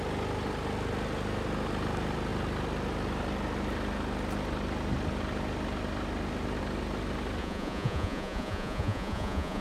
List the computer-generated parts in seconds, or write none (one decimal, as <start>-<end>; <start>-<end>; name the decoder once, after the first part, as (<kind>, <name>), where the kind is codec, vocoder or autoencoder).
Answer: 7.4-9.6 (vocoder, Vocos)